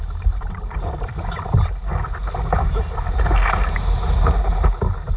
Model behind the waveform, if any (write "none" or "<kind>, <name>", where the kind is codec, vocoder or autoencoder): none